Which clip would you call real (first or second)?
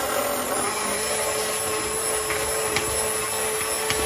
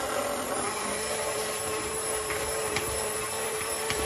first